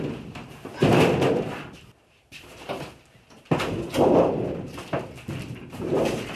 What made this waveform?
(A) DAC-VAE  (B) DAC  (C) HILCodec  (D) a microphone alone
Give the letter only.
D